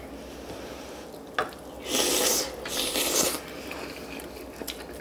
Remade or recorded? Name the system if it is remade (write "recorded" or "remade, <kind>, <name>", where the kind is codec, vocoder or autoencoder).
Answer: recorded